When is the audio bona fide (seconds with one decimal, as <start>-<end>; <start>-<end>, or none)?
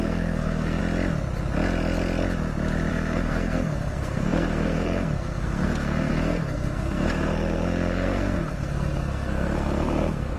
0.8-2.9